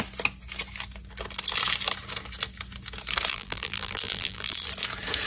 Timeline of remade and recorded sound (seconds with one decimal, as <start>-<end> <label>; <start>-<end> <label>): 0.0-3.3 recorded; 3.3-4.7 remade; 4.7-5.3 recorded